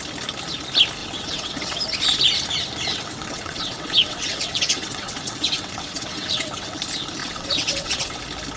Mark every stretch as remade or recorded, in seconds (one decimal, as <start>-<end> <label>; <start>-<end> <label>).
0.0-1.0 recorded; 1.0-1.8 remade; 1.8-2.9 recorded; 2.9-6.8 remade; 6.8-7.2 recorded; 7.2-8.2 remade; 8.2-8.6 recorded